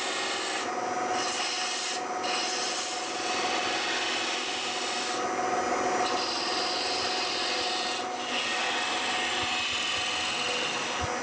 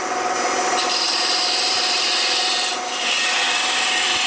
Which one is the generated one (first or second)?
second